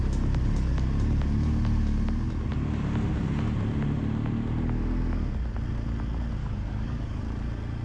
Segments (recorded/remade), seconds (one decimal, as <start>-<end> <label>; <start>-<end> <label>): 0.0-6.4 recorded; 6.4-7.2 remade; 7.2-7.8 recorded